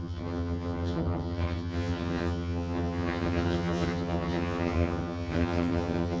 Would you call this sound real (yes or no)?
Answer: no